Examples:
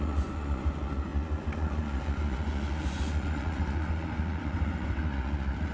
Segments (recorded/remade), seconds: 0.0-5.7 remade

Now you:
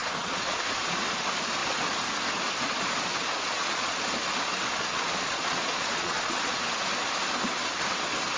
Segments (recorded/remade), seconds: 0.0-0.6 remade; 0.6-3.3 recorded; 3.3-4.0 remade; 4.0-4.8 recorded; 4.8-6.6 remade; 6.6-8.4 recorded

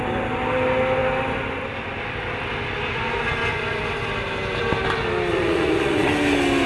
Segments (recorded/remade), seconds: 0.0-5.3 recorded; 5.3-6.1 remade; 6.1-6.7 recorded

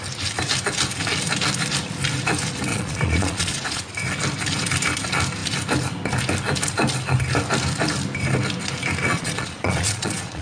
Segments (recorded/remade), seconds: 0.0-2.7 recorded; 2.7-3.8 remade; 3.8-9.1 recorded; 9.1-10.4 remade